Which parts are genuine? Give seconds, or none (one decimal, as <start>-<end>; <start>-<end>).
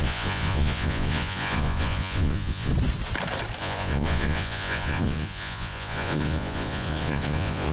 2.7-3.6